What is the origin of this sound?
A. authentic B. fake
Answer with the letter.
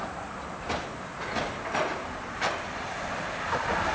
A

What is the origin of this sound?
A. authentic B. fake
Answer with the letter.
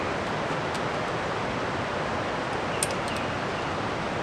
A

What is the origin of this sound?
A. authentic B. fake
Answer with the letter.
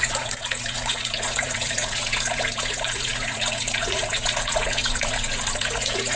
B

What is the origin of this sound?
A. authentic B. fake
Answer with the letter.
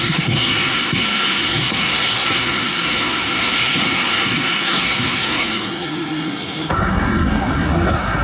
B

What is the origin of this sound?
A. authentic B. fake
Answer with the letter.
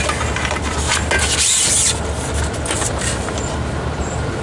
A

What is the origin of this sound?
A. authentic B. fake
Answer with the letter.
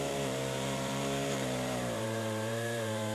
B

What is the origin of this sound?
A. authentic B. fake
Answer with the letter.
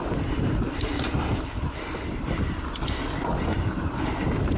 A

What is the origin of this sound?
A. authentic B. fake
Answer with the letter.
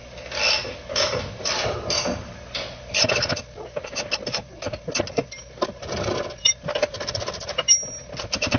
A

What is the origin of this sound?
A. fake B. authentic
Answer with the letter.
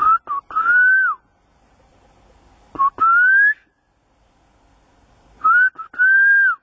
B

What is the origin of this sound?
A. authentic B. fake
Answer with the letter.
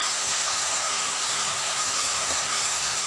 B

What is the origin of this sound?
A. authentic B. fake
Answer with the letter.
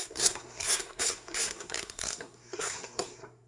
B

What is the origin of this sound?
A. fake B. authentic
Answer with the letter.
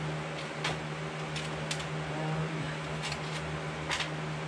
B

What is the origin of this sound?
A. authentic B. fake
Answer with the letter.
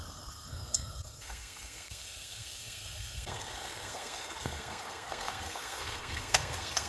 B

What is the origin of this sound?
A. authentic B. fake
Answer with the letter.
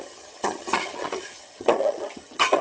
B